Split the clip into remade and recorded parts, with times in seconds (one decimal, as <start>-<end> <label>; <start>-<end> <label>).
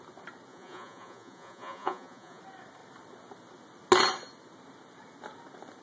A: 0.0-0.5 recorded; 0.5-2.4 remade; 2.4-5.8 recorded